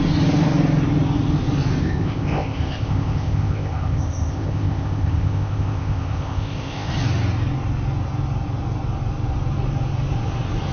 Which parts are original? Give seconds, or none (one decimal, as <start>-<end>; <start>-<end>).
0.0-1.8; 6.9-10.7